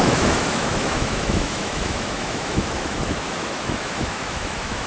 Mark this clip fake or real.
fake